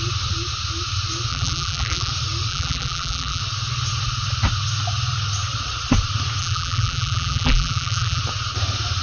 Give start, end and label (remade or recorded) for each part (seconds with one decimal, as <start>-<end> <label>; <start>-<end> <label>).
0.0-1.3 recorded; 1.3-2.1 remade; 2.1-2.5 recorded; 2.5-3.4 remade; 3.4-6.4 recorded; 6.4-8.2 remade; 8.2-9.0 recorded